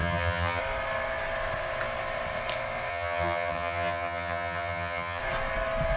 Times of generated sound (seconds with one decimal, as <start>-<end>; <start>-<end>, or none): 0.0-0.6; 2.9-5.2